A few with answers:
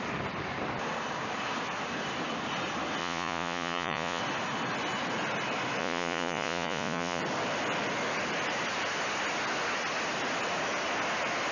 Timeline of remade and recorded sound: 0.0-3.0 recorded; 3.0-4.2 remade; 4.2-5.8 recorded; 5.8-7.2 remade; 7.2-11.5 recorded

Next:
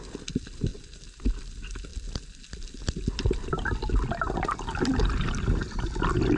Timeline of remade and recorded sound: 0.0-6.4 recorded

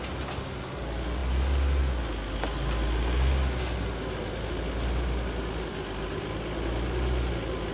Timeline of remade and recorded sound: 0.0-7.7 recorded

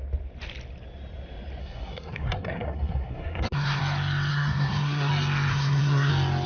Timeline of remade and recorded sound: 0.0-1.6 recorded; 1.6-3.8 remade; 3.8-4.3 recorded; 4.3-5.1 remade; 5.1-5.5 recorded; 5.5-6.1 remade; 6.1-6.5 recorded

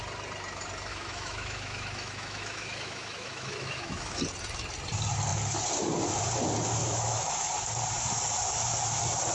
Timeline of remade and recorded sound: 0.0-0.9 recorded; 0.9-4.2 remade; 4.2-6.8 recorded; 6.8-7.5 remade; 7.5-9.3 recorded

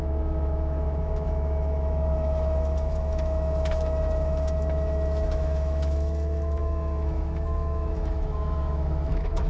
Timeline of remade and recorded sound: 0.0-9.5 remade